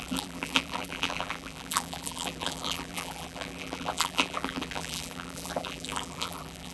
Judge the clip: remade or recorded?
remade